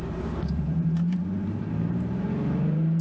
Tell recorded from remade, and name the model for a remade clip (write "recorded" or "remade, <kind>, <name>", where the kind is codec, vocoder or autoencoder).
remade, vocoder, BigVGAN v2